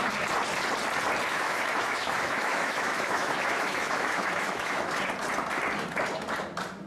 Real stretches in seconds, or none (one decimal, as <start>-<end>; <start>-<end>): 0.0-1.3; 4.9-6.9